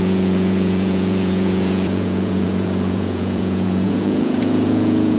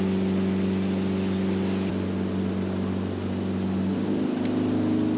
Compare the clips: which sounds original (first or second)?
second